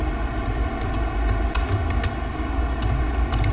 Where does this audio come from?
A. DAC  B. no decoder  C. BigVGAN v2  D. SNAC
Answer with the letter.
B